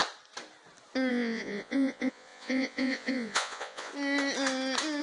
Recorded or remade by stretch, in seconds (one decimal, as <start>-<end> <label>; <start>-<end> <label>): 0.0-1.1 recorded; 1.1-3.9 remade; 3.9-5.0 recorded